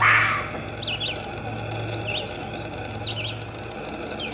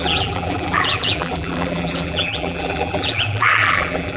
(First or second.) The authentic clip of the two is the first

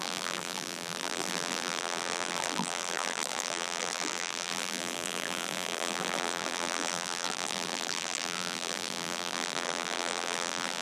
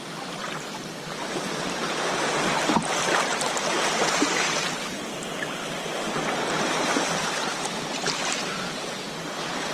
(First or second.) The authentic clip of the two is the second